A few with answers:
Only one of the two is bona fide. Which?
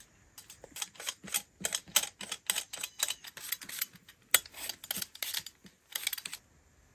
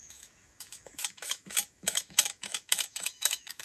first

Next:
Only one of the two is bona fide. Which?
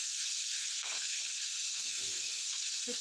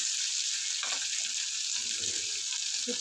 second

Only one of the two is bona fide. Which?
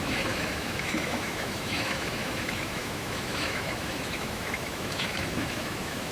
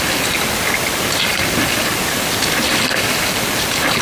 second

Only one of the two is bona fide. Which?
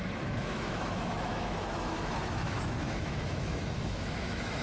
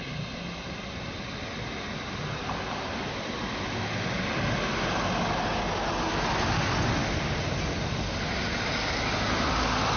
second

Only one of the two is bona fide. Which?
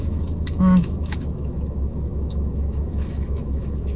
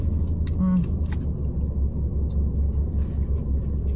second